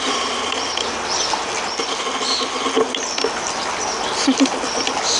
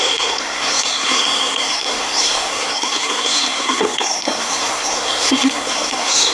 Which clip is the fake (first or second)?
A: second